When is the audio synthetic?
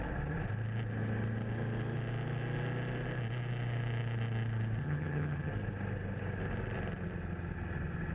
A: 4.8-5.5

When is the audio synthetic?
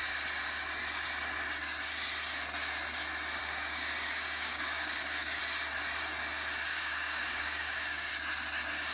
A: 3.4-5.4; 6.7-8.1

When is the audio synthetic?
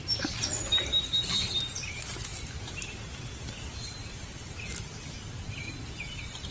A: 2.3-2.8